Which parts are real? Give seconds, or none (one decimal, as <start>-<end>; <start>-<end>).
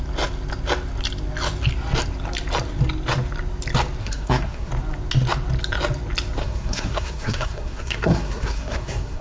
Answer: 0.0-4.0; 4.7-6.4